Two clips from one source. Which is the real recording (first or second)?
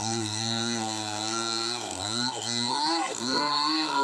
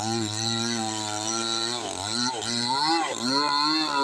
second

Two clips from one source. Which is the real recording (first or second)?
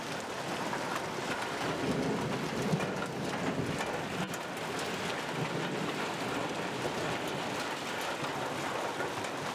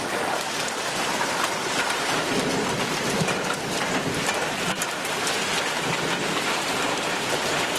first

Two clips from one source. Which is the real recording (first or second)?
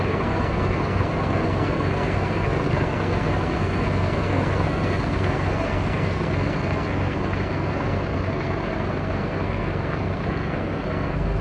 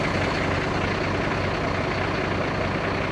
second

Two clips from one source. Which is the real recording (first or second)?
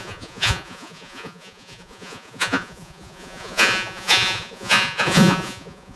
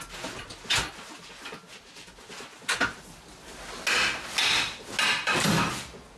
second